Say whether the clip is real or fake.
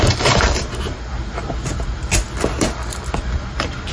real